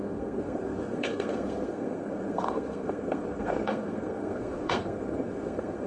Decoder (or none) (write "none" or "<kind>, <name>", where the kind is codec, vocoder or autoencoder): codec, SNAC